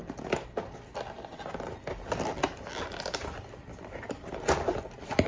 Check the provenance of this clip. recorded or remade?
recorded